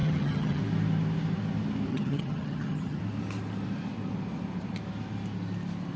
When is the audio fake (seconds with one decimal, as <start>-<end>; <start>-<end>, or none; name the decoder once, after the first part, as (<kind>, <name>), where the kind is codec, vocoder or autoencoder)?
0.0-0.6 (vocoder, HiFi-GAN); 1.9-3.0